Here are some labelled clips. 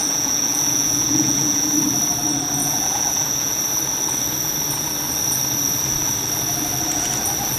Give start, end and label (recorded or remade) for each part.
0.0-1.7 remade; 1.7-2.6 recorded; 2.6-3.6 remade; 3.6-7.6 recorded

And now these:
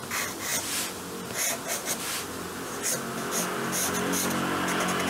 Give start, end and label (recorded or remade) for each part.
0.0-5.1 recorded

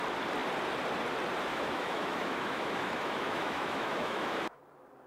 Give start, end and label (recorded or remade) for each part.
0.0-1.5 recorded; 1.5-4.6 remade; 4.6-5.1 recorded